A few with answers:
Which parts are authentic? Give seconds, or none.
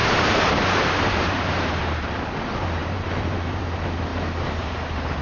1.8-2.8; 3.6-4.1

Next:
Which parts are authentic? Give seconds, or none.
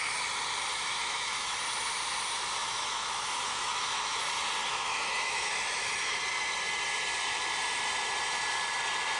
0.0-0.7; 1.6-2.6; 4.2-4.7; 6.2-9.2